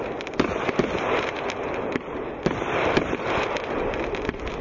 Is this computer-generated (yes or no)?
no